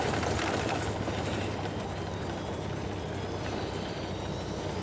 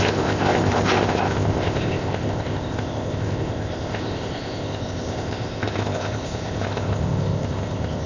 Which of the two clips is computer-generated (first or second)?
second